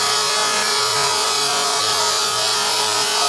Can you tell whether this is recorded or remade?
remade